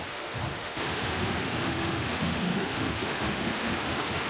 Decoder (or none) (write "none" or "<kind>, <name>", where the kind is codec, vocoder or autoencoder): autoencoder, DAC-VAE